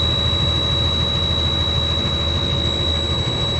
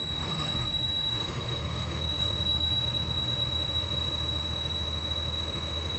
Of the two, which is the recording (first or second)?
first